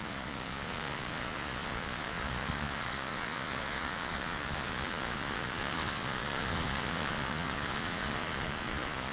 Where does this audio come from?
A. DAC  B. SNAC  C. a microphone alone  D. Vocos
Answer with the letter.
D